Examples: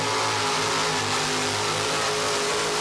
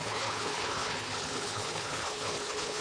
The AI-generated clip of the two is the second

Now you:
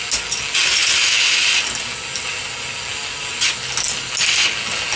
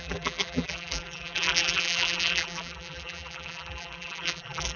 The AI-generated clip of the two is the second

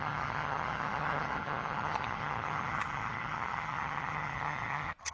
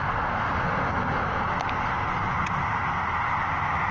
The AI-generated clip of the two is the first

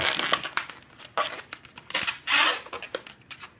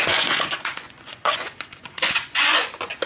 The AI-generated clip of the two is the second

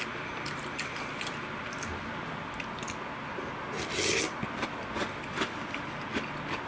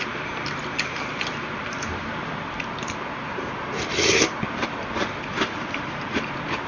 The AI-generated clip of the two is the second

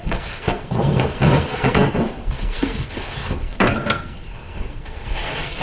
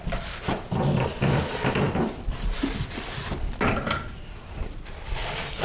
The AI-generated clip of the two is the first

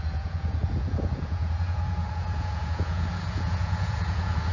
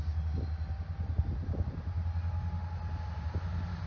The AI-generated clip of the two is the first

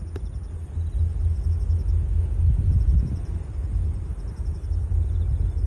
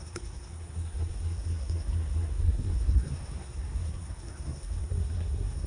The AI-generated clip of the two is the second